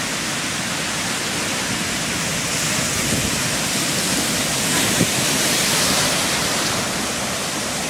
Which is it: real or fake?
real